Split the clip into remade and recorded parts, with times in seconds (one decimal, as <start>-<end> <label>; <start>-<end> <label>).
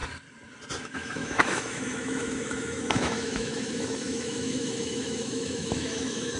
0.0-0.8 recorded; 0.8-6.4 remade